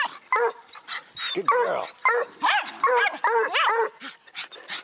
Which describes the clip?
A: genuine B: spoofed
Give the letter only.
A